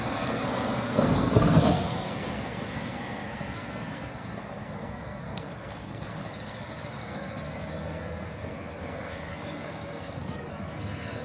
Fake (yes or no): yes